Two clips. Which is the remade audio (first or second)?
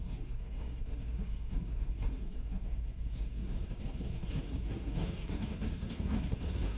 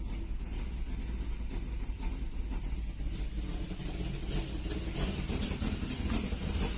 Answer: first